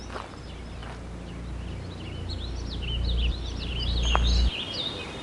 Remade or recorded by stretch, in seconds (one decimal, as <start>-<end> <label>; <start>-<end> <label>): 0.0-5.2 recorded